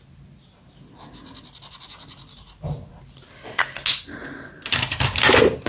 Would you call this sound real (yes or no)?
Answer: yes